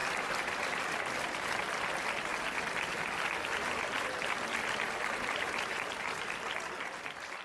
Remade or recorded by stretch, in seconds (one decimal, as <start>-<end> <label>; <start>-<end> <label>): 0.0-2.3 remade; 2.3-6.7 recorded; 6.7-7.4 remade